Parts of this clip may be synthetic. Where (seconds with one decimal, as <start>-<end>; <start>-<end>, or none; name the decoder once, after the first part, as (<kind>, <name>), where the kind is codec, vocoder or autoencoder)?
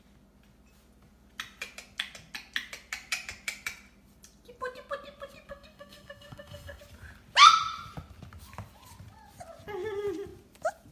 5.5-6.8 (codec, SNAC)